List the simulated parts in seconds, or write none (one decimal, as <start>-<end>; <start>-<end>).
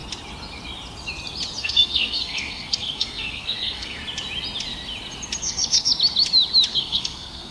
1.6-4.0; 5.4-5.9; 6.7-7.5